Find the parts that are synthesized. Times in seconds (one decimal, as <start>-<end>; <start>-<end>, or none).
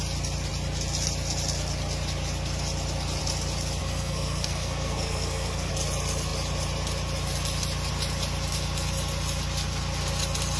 3.8-5.7